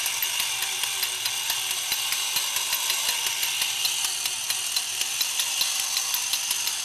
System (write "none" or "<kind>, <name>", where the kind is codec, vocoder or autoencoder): none